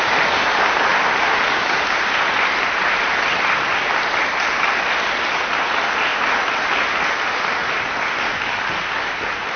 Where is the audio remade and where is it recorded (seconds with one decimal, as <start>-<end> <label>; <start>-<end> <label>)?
0.0-9.6 recorded